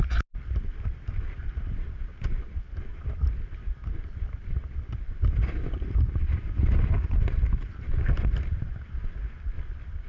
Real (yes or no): yes